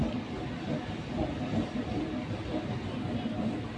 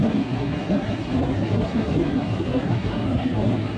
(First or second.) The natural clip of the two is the first